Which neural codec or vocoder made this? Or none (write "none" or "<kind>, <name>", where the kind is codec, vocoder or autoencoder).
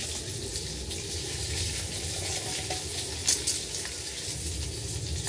none